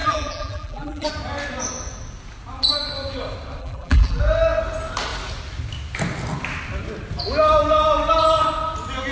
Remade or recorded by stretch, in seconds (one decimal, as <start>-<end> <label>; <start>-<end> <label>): 0.0-1.1 remade; 1.1-3.6 recorded; 3.6-4.2 remade; 4.2-9.1 recorded